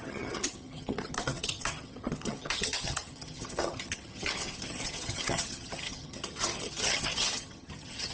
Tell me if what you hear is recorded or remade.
remade